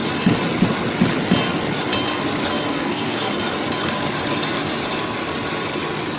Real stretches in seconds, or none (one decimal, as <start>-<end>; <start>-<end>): 0.0-2.7; 3.3-6.2